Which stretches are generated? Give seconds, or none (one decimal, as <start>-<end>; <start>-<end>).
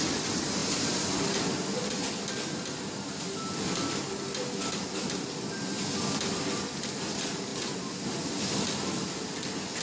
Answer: 0.6-1.8